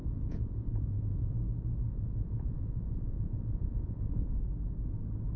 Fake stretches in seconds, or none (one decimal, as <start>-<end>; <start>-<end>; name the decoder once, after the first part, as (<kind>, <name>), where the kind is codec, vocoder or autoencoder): 0.0-1.3 (vocoder, Vocos); 1.9-4.3